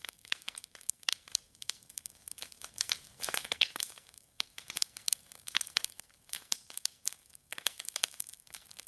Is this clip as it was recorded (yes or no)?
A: no